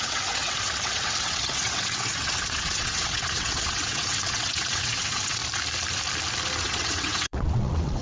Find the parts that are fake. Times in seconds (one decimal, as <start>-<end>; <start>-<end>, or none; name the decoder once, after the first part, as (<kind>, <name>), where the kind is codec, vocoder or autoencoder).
0.0-5.4 (vocoder, WaveNeXt); 6.6-8.0